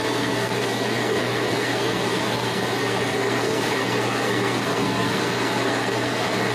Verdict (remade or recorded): remade